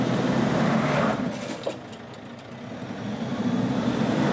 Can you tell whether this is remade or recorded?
recorded